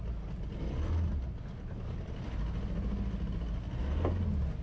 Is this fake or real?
real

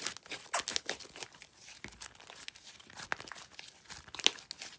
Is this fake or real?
real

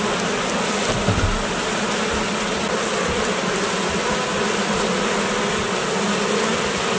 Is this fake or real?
real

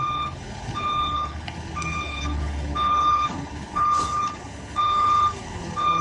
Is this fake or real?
fake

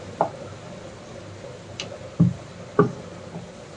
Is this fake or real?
real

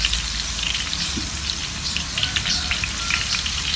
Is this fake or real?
real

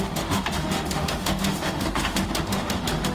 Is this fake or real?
fake